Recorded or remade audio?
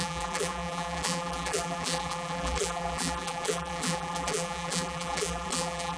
remade